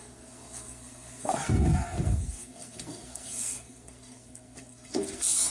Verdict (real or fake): fake